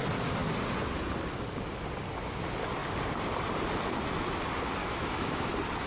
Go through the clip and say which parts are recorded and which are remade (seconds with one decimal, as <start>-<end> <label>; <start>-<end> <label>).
0.0-4.8 recorded; 4.8-5.5 remade; 5.5-5.9 recorded